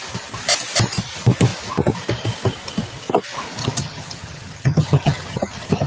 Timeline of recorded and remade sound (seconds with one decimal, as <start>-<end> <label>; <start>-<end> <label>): 0.0-3.6 recorded; 3.6-5.9 remade